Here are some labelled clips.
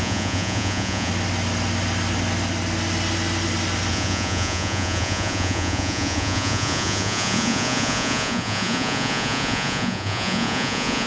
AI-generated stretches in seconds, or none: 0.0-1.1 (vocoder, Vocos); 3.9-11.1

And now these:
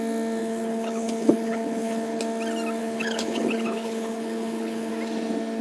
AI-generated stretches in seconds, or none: 0.4-2.2 (codec, HILCodec); 2.8-4.9